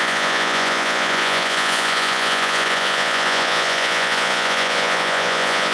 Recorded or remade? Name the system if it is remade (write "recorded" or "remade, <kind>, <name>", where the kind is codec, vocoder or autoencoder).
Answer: remade, vocoder, Vocos